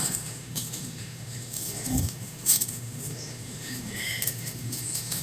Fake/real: fake